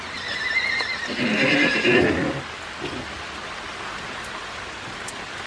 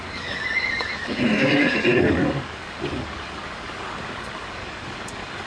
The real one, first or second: first